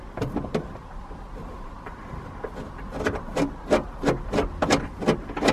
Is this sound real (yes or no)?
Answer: yes